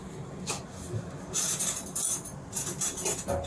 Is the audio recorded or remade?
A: recorded